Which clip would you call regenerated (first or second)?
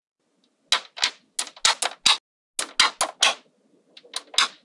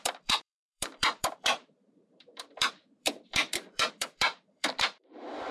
second